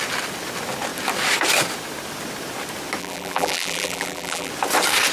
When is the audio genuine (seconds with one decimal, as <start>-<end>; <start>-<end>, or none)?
0.0-3.0; 4.5-5.1